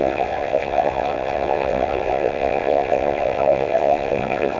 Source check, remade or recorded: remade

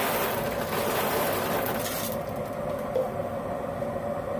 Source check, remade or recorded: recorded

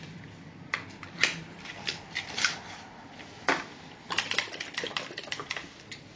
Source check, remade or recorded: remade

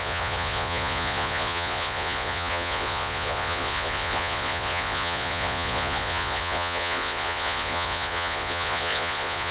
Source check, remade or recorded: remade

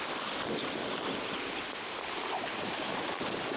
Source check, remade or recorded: recorded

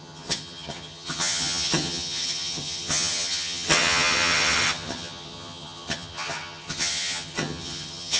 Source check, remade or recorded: remade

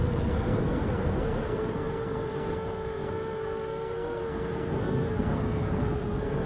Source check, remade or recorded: remade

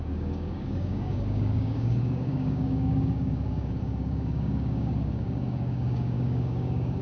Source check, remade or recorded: remade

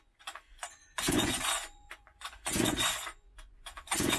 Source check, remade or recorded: remade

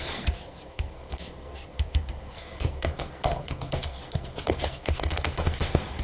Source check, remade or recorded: remade